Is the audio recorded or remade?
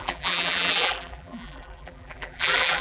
remade